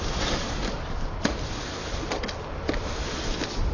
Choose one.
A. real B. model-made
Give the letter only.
A